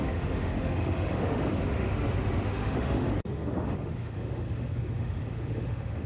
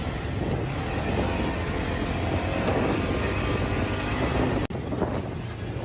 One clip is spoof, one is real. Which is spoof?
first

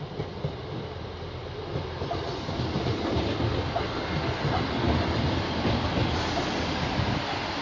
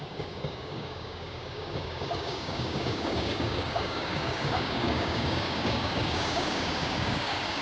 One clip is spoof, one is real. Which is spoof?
second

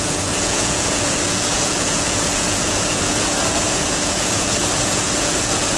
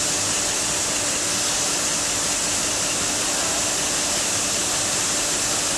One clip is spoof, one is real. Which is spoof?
first